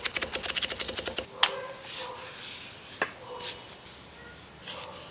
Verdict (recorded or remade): recorded